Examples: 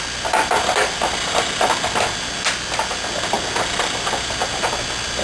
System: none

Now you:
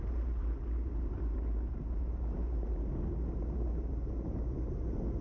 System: none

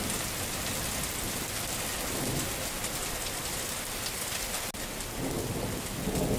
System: none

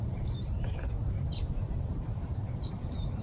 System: vocoder, BigVGAN v2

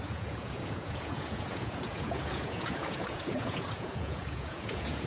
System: vocoder, Vocos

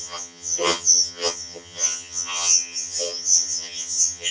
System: vocoder, HiFi-GAN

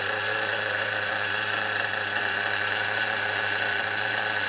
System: vocoder, BigVGAN v2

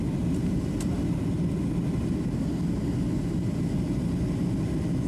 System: none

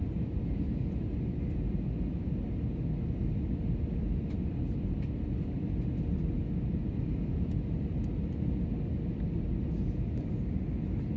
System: none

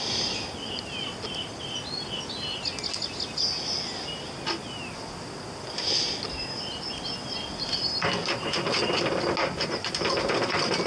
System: none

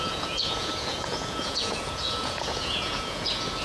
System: vocoder, Vocos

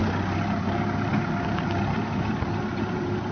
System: none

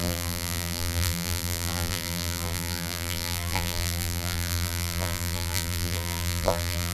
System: vocoder, BigVGAN v2